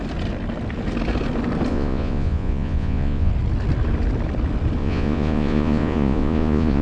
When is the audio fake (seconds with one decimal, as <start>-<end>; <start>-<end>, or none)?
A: 1.7-3.3; 4.8-6.8